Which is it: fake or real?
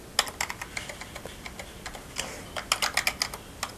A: real